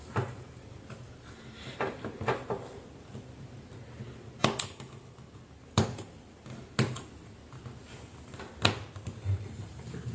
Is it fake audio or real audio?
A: real